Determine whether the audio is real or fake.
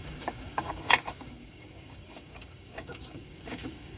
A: fake